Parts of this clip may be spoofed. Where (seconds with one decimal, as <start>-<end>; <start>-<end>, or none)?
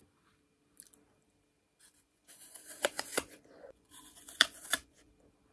1.8-5.1